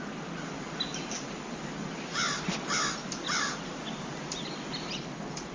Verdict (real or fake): real